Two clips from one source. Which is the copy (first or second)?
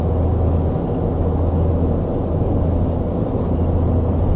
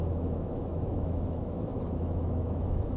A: second